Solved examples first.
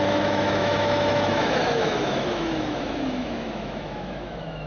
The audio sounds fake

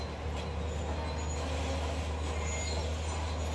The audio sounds real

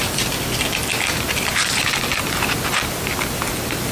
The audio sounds real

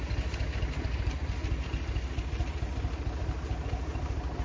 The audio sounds real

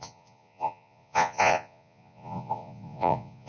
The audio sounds fake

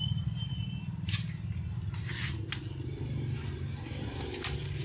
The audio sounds real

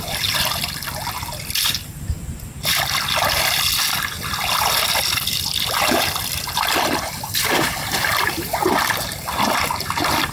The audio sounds real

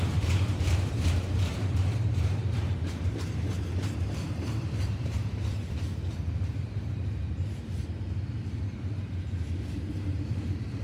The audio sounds fake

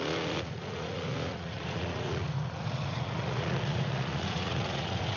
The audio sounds fake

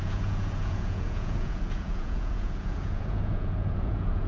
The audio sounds fake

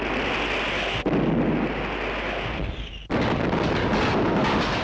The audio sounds real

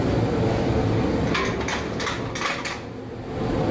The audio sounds real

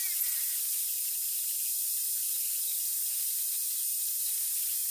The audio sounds real